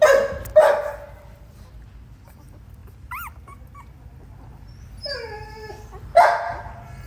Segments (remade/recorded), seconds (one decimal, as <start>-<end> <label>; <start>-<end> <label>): 0.0-7.1 recorded

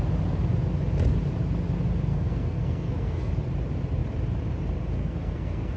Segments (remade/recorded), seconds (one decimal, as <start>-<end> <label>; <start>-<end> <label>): 0.0-2.1 recorded; 2.1-3.3 remade; 3.3-5.0 recorded; 5.0-5.8 remade

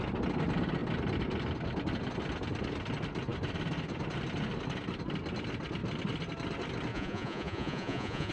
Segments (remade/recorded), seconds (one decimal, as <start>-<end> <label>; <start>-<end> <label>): 0.0-6.9 recorded; 6.9-8.3 remade

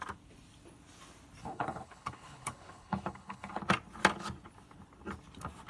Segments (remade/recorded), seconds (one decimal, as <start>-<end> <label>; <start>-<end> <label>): 0.0-1.4 recorded; 1.4-3.6 remade; 3.6-5.7 recorded